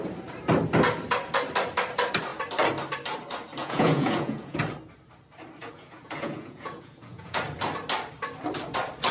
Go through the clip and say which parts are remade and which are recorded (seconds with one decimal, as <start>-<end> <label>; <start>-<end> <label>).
0.0-3.6 recorded; 3.6-4.6 remade; 4.6-5.6 recorded; 5.6-7.4 remade; 7.4-9.1 recorded